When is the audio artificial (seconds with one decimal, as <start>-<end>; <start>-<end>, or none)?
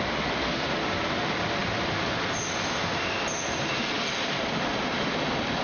none